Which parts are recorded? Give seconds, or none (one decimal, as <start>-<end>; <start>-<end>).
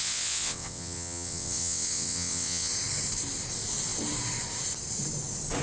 2.7-5.6